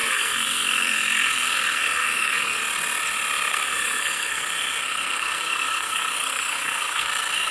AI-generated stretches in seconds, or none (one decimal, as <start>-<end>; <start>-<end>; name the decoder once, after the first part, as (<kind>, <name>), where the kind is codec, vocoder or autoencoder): 0.0-2.6 (codec, SNAC); 3.5-7.5